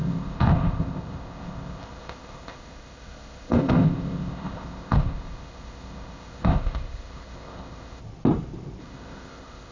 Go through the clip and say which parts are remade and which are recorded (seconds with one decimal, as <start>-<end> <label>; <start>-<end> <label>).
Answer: 0.0-8.0 remade; 8.0-8.8 recorded; 8.8-9.7 remade